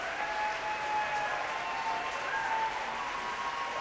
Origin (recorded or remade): recorded